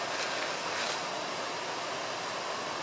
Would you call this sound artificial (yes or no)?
no